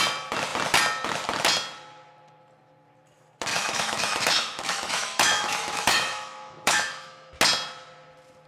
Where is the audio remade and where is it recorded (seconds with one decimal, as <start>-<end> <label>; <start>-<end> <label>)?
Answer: 0.0-3.5 recorded; 3.5-7.3 remade; 7.3-8.5 recorded